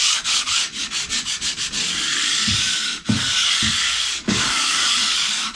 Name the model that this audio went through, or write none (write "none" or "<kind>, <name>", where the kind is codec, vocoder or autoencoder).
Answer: codec, DAC